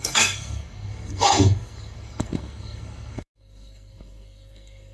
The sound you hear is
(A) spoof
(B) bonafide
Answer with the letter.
A